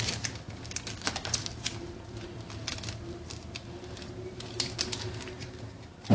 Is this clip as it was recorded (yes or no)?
yes